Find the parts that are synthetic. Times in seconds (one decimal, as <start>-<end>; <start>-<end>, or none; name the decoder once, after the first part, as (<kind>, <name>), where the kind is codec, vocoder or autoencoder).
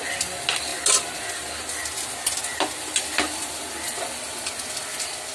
none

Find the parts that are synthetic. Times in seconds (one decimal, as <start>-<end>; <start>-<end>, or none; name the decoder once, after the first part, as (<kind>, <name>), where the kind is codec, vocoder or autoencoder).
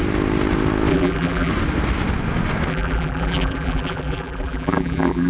0.9-1.5 (vocoder, BigVGAN v2); 2.7-5.3